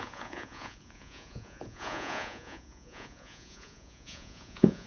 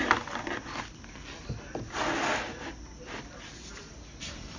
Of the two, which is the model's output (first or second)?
first